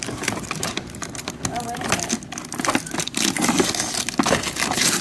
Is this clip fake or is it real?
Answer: real